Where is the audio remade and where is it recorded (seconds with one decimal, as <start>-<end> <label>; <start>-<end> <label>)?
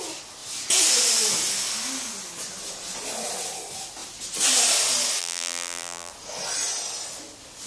0.0-5.2 recorded; 5.2-6.1 remade; 6.1-7.7 recorded